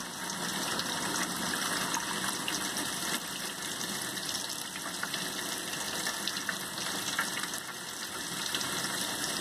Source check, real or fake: real